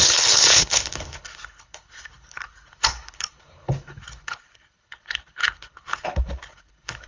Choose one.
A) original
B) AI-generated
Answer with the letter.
B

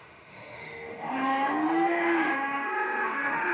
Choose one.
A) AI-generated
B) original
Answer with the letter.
A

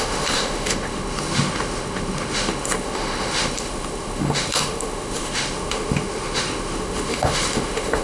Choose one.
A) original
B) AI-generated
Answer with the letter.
B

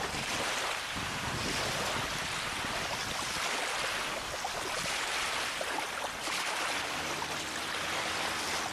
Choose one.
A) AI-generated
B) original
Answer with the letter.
B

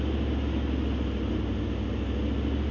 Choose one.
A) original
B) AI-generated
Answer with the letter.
A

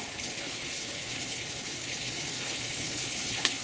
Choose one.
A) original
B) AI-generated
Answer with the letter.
B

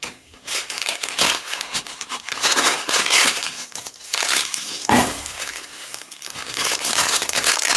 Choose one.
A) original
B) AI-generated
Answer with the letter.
B